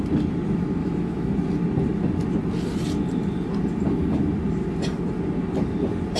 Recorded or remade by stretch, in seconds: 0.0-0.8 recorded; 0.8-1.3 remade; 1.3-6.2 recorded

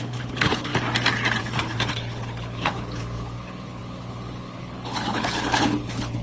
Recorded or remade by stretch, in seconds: 0.0-0.7 remade; 0.7-1.4 recorded; 1.4-6.2 remade

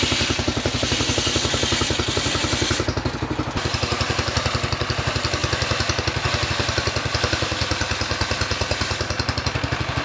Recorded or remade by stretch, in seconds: 0.0-10.0 recorded

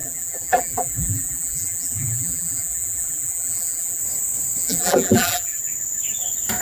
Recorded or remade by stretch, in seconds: 0.0-4.0 remade; 4.0-4.6 recorded; 4.6-5.6 remade; 5.6-6.6 recorded

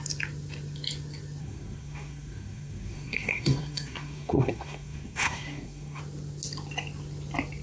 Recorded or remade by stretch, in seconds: 0.0-1.4 recorded; 1.4-6.0 remade; 6.0-7.6 recorded

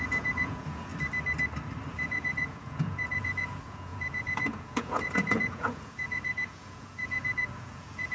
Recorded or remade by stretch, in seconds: 0.0-0.9 remade; 0.9-1.9 recorded; 1.9-8.1 remade